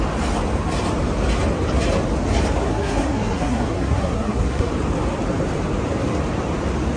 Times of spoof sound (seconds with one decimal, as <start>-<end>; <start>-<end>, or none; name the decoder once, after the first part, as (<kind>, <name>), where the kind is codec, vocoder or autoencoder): 2.6-4.7 (codec, SNAC)